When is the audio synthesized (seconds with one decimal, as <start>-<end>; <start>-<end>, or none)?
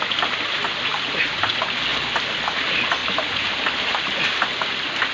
0.9-1.5; 3.0-4.2